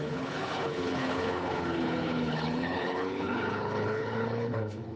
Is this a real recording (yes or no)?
no